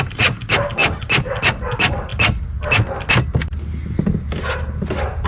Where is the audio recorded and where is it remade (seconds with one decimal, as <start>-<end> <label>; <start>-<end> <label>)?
0.0-5.3 recorded